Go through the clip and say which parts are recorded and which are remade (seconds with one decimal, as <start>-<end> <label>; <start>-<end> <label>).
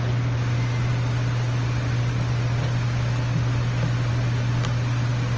0.0-5.4 recorded